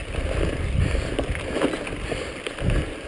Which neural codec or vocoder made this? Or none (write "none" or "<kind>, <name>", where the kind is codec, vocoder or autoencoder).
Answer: none